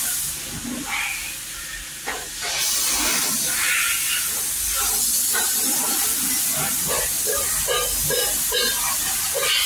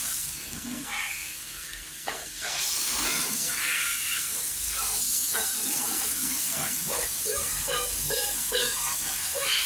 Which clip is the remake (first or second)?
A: second